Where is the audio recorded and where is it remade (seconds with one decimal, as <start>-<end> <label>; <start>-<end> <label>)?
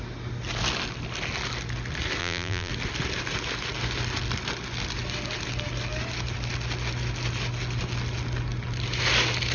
0.0-2.2 recorded; 2.2-2.7 remade; 2.7-9.5 recorded